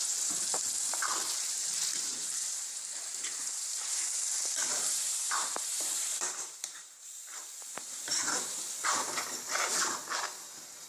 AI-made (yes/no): yes